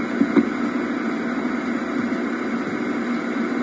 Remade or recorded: recorded